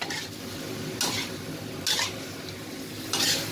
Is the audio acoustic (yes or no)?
yes